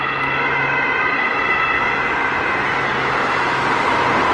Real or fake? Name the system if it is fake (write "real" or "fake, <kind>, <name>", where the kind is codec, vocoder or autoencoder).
real